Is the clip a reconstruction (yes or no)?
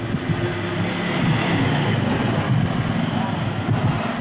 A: no